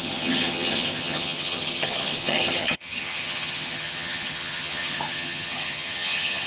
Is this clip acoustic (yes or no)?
no